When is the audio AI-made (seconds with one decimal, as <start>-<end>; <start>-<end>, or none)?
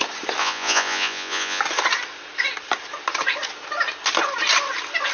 0.4-1.6